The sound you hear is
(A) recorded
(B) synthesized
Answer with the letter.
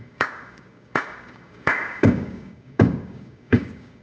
B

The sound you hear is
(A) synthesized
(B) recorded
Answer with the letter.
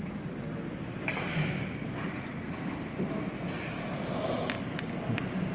B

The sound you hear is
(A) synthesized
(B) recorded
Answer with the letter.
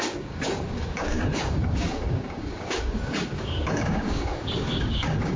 A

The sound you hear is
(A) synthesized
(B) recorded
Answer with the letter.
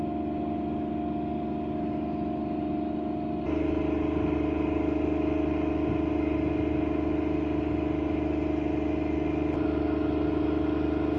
B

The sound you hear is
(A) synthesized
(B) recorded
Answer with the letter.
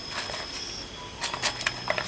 B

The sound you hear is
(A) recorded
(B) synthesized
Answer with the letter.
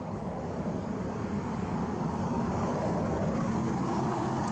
B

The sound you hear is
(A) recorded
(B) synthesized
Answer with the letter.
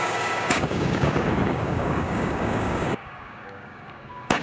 B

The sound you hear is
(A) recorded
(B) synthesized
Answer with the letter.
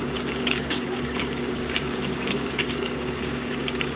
B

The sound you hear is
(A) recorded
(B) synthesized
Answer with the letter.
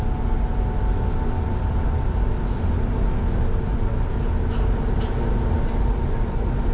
A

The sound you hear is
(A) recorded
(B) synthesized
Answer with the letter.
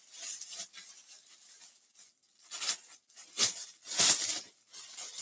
A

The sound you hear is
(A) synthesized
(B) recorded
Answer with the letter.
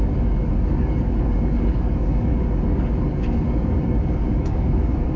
A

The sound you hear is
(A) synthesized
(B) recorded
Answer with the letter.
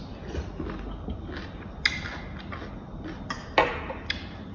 B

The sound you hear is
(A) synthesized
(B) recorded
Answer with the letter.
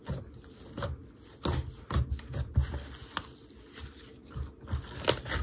B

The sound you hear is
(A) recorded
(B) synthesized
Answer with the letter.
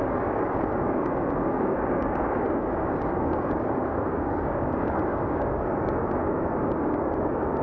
B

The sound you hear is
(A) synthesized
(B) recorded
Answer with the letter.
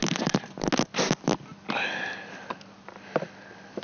B